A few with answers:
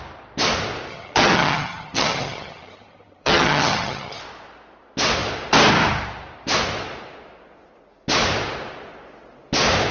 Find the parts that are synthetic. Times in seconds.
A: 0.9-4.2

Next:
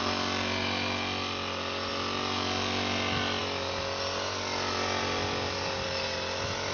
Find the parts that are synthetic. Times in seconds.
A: none

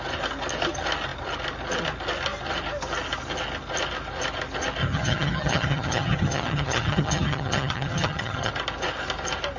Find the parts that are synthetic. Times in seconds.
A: 4.8-8.5

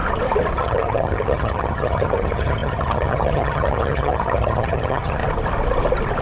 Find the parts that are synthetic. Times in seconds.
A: 0.6-5.2

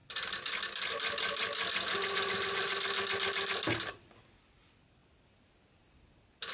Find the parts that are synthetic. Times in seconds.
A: none

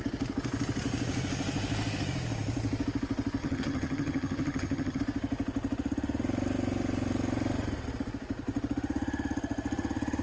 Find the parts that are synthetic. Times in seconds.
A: 3.4-5.0

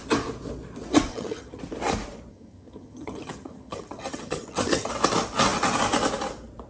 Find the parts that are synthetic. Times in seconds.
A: 1.1-1.6; 2.3-4.9